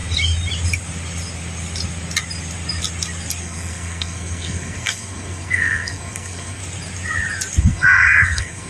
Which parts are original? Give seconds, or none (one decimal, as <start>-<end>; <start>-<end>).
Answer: 0.0-3.4; 6.6-7.6